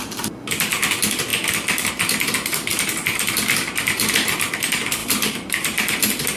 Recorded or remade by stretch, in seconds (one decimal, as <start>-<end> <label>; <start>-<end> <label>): 0.0-2.7 recorded; 2.7-4.5 remade; 4.5-5.0 recorded; 5.0-6.0 remade; 6.0-6.4 recorded